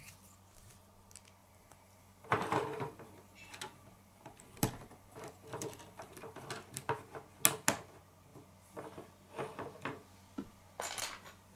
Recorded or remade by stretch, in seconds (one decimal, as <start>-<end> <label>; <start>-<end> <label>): 0.0-1.4 recorded; 1.4-6.5 remade; 6.5-11.6 recorded